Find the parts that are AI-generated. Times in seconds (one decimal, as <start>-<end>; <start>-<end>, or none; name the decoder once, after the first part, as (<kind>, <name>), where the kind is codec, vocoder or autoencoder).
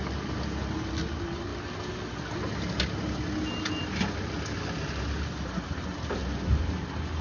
none